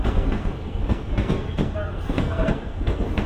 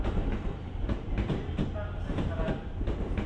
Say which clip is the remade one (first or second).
first